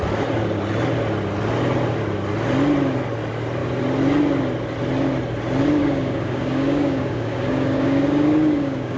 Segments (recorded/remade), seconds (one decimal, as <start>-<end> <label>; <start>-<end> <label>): 0.0-5.8 recorded; 5.8-9.0 remade